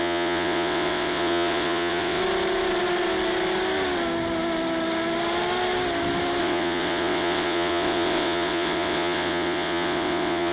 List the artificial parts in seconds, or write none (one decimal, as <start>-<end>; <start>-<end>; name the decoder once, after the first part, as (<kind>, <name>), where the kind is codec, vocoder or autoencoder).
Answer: 0.0-2.2 (vocoder, WaveNeXt); 6.4-10.5